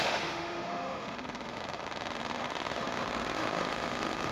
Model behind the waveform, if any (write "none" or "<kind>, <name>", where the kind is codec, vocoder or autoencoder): autoencoder, DAC-VAE